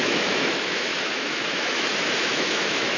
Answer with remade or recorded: remade